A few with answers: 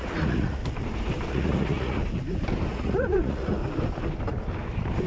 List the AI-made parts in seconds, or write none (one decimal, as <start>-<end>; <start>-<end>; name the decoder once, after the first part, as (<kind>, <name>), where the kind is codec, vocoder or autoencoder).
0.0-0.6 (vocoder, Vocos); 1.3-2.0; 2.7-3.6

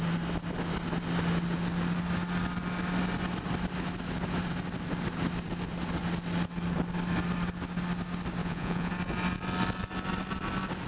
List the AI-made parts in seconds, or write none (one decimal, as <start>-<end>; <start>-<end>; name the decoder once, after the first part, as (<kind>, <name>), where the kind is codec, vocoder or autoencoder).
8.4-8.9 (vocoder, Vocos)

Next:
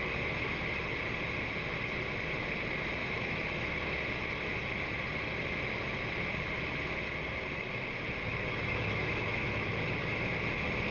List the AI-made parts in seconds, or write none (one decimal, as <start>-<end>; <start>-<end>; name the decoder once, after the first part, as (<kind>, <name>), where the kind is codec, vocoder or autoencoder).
3.0-3.8 (autoencoder, DAC-VAE); 8.3-9.7

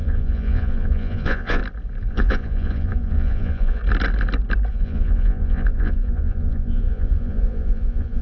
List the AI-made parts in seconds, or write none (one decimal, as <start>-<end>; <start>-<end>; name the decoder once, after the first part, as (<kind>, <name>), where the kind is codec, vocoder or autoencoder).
0.0-1.6 (vocoder, Vocos); 2.1-3.8; 4.7-8.2

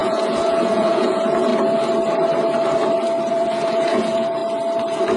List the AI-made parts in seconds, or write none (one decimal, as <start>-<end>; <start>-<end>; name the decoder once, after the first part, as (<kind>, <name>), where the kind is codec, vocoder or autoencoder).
0.0-1.5 (vocoder, Vocos); 3.3-4.4

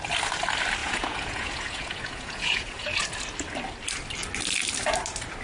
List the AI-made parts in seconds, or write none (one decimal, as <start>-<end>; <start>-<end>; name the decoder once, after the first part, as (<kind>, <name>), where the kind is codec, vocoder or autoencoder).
0.8-3.0 (vocoder, Vocos)

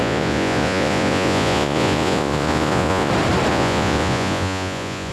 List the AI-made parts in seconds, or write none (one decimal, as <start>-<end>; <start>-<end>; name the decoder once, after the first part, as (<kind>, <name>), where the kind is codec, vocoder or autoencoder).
0.0-3.1 (vocoder, Vocos); 3.5-5.1

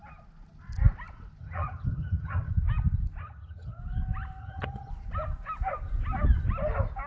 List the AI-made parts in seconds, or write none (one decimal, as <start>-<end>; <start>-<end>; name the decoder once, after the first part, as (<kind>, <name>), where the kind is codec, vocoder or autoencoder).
1.4-2.5 (vocoder, HiFi-GAN); 3.2-3.8; 4.4-4.9